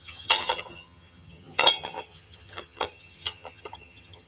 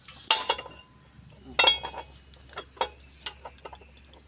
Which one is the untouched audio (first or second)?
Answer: second